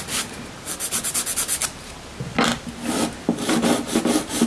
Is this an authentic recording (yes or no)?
yes